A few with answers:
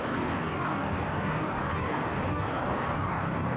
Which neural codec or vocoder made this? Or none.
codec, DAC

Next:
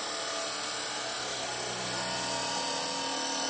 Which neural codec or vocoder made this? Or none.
none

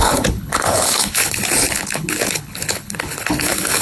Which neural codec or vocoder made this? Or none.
codec, HILCodec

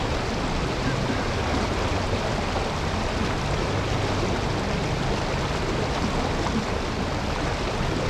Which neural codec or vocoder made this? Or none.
none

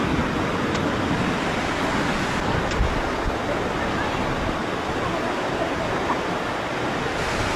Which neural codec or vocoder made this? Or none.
none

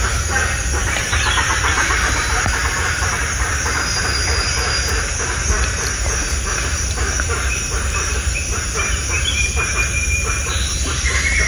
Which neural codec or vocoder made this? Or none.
vocoder, BigVGAN v2